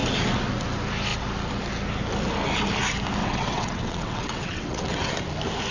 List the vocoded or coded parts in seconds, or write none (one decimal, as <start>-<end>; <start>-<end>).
3.2-5.1